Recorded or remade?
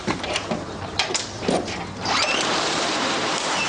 remade